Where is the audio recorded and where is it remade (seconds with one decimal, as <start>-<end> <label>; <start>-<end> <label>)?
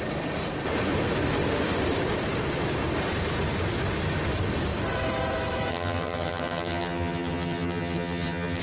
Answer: 0.0-5.7 recorded; 5.7-8.6 remade